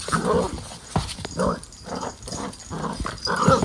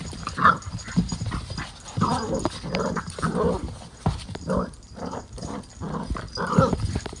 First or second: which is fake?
second